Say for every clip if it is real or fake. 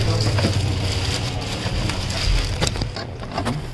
real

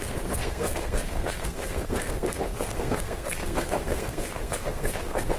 fake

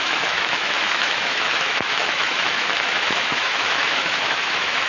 fake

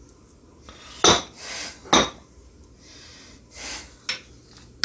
real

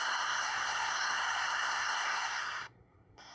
fake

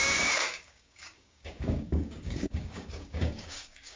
fake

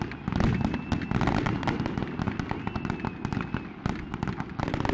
real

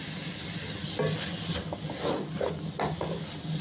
real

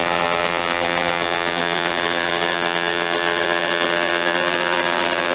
fake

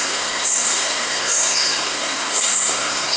fake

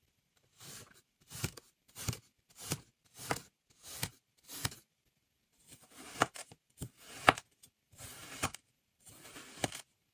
fake